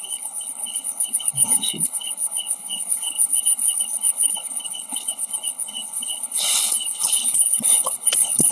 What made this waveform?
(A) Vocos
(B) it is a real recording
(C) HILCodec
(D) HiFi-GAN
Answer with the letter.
C